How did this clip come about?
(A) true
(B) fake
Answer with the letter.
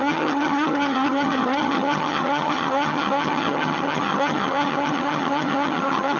B